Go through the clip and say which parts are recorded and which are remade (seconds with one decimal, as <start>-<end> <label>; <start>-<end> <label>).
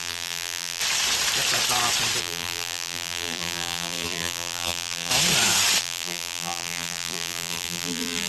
0.0-0.8 remade; 0.8-2.2 recorded; 2.2-5.1 remade; 5.1-5.8 recorded; 5.8-8.3 remade